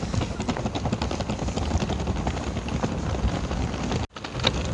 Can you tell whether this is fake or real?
real